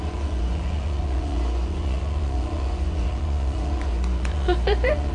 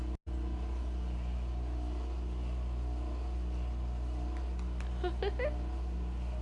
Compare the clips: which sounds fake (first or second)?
first